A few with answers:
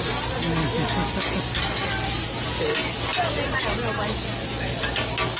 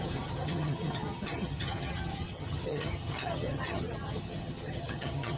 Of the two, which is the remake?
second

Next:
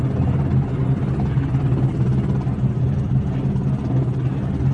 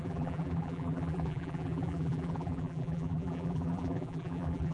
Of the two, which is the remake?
second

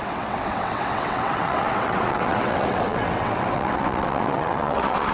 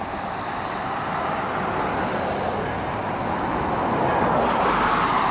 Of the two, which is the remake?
first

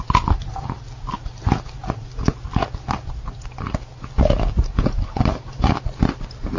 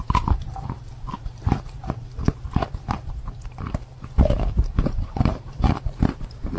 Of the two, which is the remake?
second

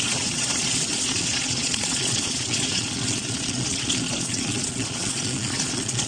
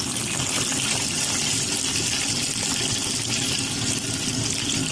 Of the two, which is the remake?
first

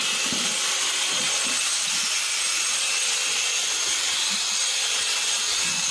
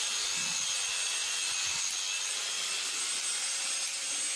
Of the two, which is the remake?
first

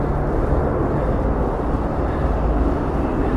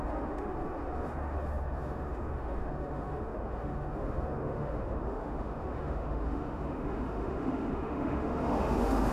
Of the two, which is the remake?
second